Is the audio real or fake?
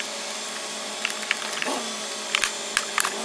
fake